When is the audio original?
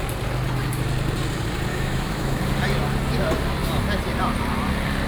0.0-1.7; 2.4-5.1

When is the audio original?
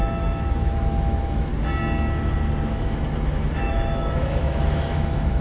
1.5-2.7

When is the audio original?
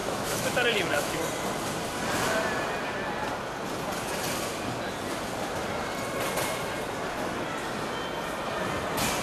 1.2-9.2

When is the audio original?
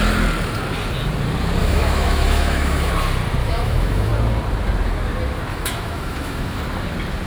0.0-1.6; 2.9-3.4; 4.1-5.5; 6.6-7.3